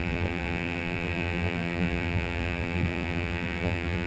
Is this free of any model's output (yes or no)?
no